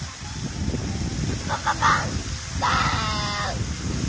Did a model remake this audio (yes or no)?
no